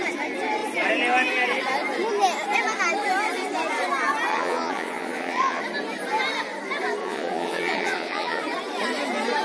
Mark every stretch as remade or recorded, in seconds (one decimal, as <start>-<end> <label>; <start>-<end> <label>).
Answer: 0.0-4.3 recorded; 4.3-5.6 remade; 5.6-7.0 recorded; 7.0-8.4 remade; 8.4-9.4 recorded